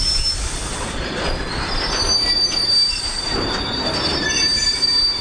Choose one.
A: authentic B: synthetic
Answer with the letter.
A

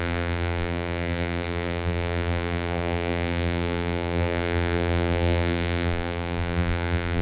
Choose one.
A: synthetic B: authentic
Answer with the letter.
A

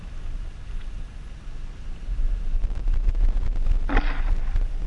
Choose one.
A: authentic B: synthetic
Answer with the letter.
A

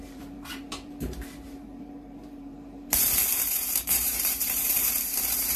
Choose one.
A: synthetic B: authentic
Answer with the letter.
A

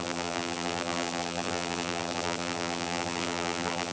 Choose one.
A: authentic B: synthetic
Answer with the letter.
B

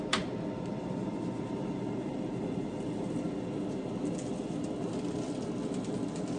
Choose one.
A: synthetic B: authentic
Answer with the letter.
B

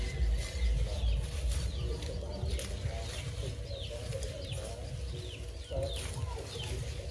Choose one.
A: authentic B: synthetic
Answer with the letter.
A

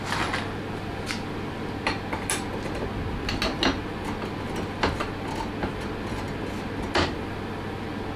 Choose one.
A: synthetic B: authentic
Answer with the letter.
B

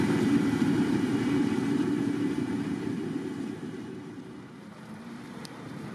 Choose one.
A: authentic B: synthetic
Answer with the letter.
B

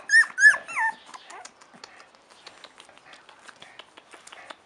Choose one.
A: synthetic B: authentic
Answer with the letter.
B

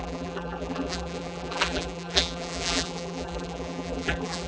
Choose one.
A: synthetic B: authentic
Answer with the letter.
A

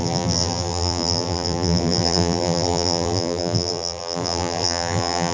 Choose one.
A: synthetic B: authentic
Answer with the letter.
A